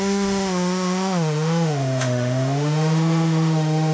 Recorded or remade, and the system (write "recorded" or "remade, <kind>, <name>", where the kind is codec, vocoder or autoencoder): remade, autoencoder, DAC-VAE